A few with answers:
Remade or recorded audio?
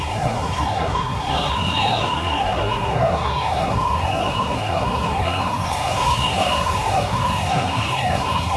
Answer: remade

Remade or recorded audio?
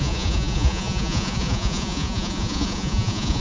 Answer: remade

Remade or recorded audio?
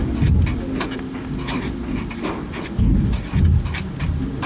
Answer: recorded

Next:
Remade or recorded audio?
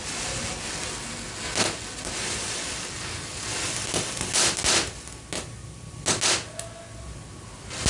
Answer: recorded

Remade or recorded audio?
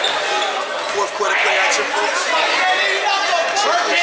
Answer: recorded